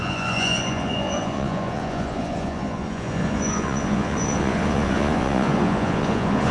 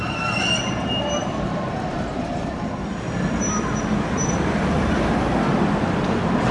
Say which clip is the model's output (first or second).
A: first